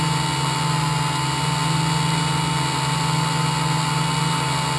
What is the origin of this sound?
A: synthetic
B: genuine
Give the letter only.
B